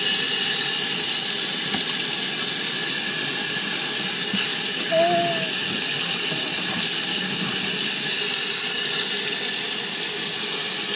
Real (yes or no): yes